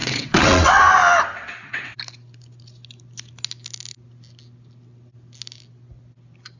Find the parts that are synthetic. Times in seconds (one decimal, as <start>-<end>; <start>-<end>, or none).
0.0-0.8; 1.3-1.9

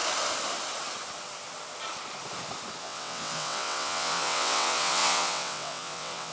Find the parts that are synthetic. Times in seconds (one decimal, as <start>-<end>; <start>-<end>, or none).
2.8-6.3